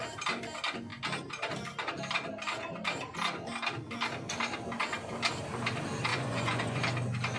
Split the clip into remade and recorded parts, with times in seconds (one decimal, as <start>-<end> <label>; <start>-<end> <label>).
0.0-6.1 recorded; 6.1-6.8 remade; 6.8-7.4 recorded